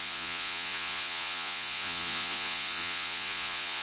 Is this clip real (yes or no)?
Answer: no